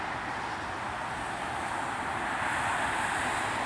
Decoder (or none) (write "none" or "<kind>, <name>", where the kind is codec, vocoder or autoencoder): none